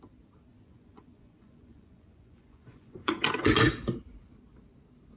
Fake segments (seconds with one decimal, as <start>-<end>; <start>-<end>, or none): 0.5-3.6